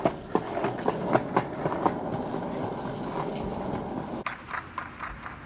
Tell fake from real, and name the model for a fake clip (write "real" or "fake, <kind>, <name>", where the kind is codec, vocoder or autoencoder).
real